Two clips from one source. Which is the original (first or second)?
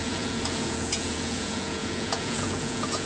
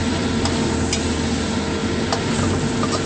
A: second